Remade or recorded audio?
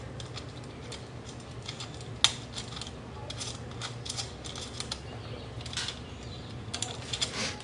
recorded